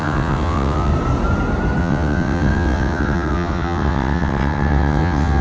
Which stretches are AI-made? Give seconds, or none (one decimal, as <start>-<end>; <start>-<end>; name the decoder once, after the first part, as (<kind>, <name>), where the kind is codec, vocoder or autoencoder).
0.0-0.9 (vocoder, WaveNeXt); 1.8-5.4